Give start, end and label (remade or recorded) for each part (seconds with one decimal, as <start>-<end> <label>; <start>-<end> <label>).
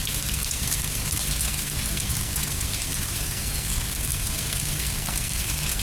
0.0-5.8 remade